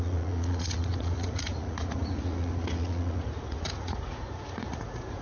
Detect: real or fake fake